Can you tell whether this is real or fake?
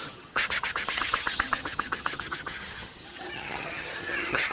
fake